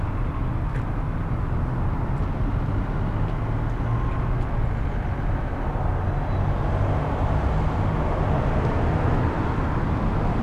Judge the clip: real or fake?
real